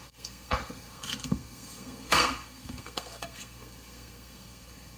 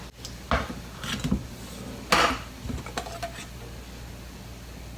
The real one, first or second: second